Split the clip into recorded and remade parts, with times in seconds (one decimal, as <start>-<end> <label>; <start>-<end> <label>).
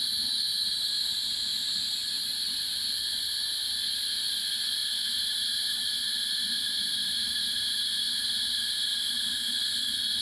0.0-4.8 recorded; 4.8-9.2 remade; 9.2-10.2 recorded